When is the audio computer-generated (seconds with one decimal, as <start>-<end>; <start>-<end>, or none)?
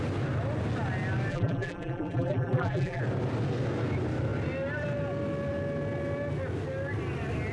1.3-3.0